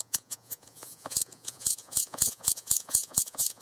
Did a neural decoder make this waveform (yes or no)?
yes